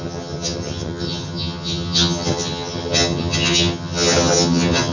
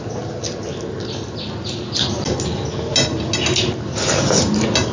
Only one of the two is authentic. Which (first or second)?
second